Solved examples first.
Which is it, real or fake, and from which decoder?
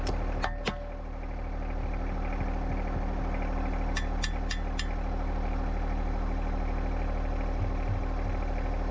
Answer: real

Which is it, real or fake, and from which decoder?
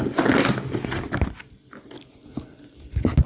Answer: real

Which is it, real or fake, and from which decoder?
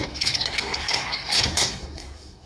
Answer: fake, codec, SNAC